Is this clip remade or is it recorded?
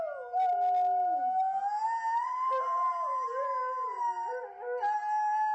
recorded